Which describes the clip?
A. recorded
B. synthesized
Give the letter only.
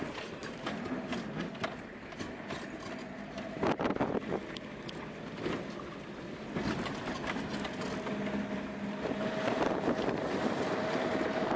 A